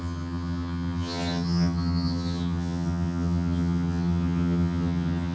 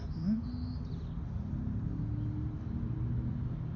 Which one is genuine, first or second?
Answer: second